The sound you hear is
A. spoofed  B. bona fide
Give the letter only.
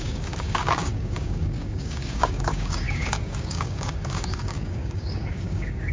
A